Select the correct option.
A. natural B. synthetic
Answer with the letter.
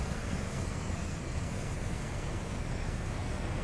B